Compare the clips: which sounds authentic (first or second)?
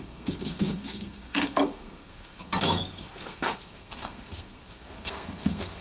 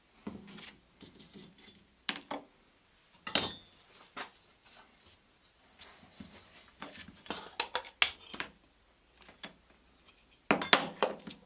second